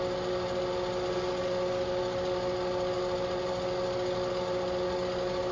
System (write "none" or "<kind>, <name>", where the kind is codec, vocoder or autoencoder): none